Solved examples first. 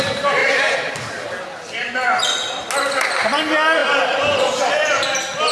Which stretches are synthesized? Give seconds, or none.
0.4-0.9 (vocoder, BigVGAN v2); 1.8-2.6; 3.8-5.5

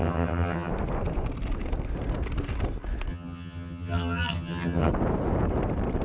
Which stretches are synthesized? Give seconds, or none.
0.0-0.7 (vocoder, HiFi-GAN); 3.1-4.9

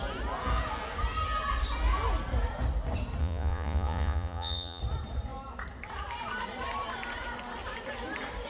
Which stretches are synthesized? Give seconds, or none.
3.2-4.8 (vocoder, Vocos)

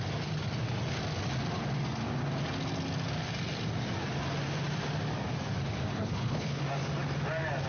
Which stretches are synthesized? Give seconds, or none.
5.9-6.6 (codec, HILCodec)

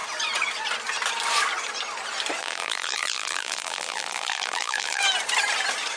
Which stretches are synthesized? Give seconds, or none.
2.4-5.0 (vocoder, BigVGAN v2)

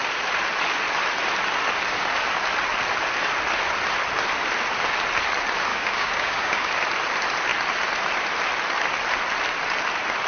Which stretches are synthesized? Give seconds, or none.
5.7-6.7 (codec, DAC)

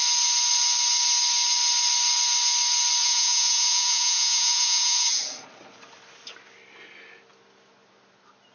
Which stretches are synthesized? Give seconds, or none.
3.0-5.2 (vocoder, Vocos)

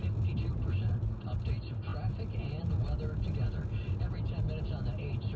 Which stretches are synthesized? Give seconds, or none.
none